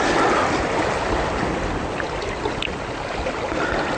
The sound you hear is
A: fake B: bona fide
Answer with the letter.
B